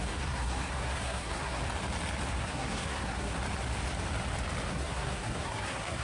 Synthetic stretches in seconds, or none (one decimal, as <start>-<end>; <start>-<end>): 0.0-1.6; 2.4-3.4; 4.7-6.0